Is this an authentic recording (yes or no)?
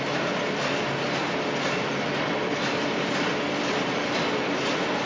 yes